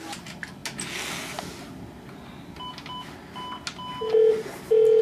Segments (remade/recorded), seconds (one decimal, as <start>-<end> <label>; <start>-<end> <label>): 0.0-5.0 recorded